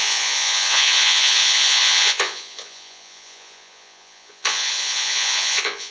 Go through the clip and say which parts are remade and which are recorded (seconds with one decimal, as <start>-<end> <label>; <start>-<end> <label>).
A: 0.0-5.9 remade